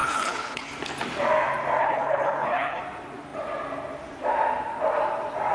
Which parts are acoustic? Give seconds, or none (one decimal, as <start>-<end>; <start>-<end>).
0.7-1.8; 2.8-5.5